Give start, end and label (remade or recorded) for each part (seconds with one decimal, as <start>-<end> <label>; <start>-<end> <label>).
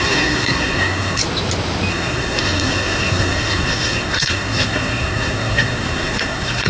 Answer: 0.0-1.2 remade; 1.2-1.9 recorded; 1.9-6.7 remade